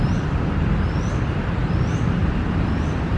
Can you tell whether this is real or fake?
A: fake